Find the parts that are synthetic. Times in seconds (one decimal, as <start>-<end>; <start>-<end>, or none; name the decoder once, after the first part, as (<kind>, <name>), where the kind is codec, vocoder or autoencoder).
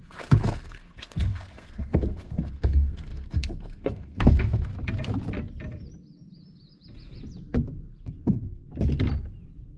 0.0-4.7 (codec, SNAC); 8.0-8.6